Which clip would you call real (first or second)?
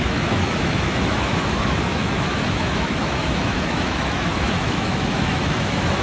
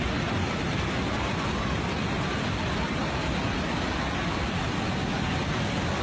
second